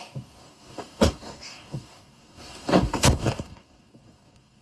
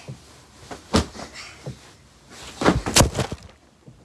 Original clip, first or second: second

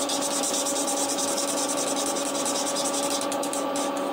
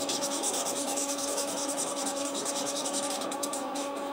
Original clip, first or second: first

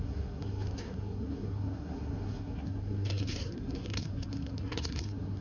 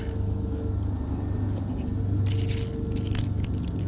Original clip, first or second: second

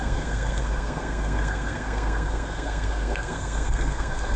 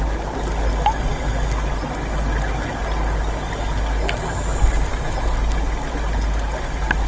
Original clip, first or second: second